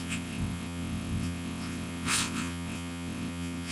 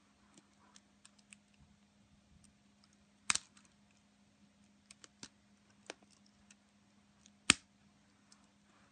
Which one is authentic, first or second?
second